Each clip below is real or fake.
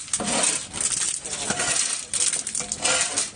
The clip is real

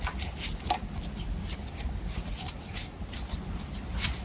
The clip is real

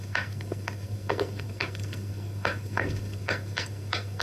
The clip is fake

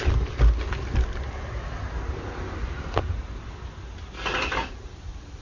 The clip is real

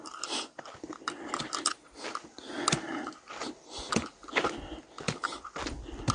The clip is real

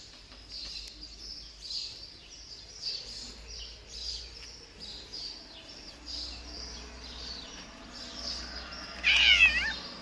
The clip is real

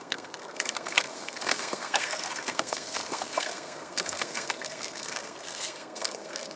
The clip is fake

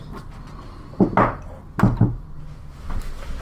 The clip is real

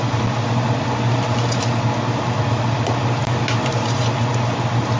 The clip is real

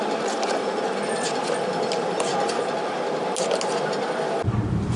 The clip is real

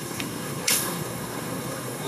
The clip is fake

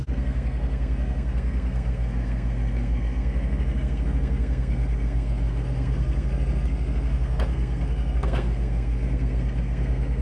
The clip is fake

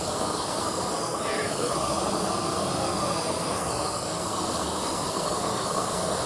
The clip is fake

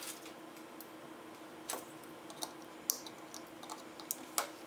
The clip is real